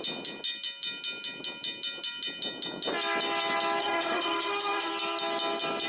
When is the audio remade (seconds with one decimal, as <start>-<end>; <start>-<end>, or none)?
3.8-4.9